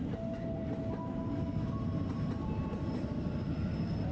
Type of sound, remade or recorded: recorded